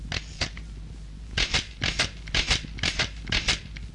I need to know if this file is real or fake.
real